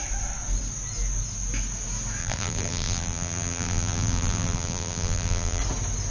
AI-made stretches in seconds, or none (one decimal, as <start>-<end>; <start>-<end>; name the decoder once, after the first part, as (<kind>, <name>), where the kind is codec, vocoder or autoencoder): 2.2-5.6 (vocoder, BigVGAN v2)